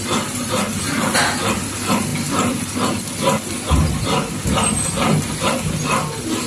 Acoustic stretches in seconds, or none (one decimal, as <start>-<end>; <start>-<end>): 0.0-6.5